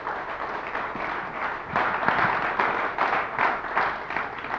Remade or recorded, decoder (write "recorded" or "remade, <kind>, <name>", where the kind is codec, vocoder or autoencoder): recorded